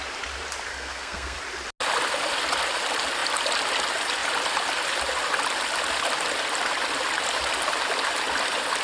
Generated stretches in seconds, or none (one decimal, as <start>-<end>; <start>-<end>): 0.7-1.4